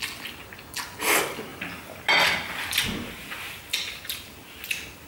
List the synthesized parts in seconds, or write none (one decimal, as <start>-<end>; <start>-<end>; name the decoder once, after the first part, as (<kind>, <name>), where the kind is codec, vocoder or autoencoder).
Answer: none